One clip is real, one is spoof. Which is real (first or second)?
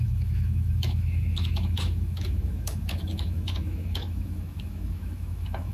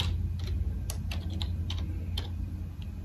second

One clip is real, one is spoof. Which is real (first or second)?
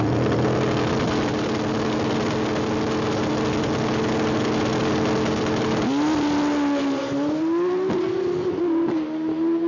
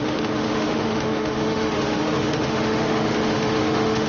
first